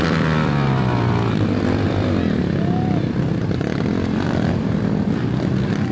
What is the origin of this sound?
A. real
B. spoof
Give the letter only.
A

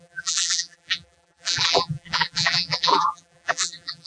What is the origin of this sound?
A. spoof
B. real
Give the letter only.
A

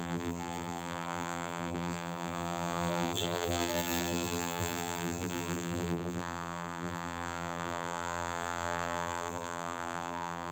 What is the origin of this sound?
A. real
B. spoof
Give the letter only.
B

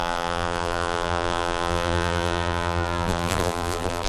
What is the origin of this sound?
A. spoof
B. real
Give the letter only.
A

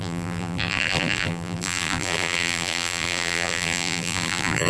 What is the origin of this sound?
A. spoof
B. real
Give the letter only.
A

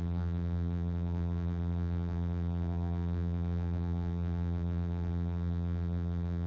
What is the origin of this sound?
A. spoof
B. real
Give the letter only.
A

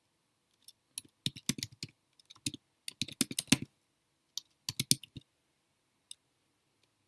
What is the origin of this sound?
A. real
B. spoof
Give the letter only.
A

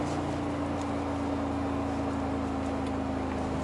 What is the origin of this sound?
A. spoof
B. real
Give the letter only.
B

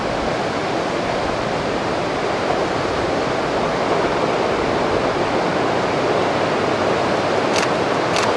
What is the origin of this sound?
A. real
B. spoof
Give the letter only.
A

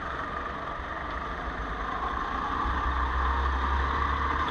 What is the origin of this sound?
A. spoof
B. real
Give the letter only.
B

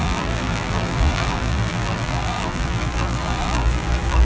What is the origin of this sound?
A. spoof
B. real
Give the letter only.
A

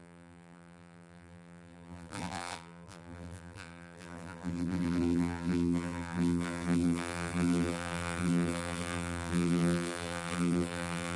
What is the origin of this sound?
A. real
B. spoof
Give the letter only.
B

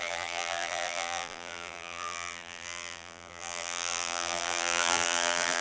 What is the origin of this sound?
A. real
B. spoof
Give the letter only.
B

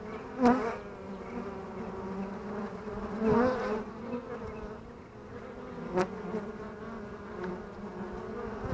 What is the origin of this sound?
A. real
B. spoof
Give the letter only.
A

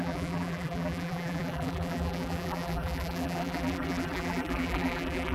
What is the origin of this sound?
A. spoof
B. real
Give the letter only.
A